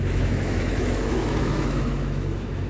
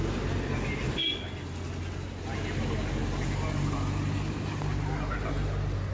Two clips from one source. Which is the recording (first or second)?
second